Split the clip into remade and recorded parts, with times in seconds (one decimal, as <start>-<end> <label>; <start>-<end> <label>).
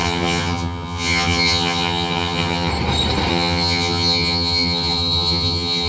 0.0-2.7 remade; 2.7-3.3 recorded; 3.3-5.9 remade